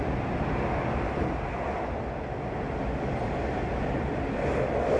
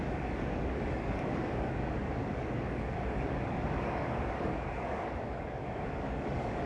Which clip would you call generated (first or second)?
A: second